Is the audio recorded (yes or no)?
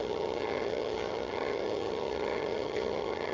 no